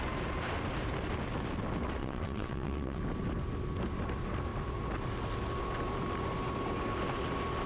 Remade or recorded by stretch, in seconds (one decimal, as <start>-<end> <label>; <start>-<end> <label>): 0.0-2.0 recorded; 2.0-3.0 remade; 3.0-7.7 recorded